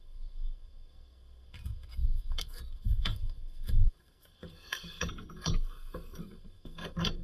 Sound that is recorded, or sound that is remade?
remade